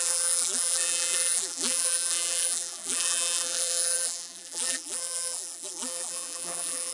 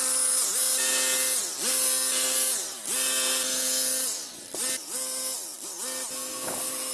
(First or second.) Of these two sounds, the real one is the second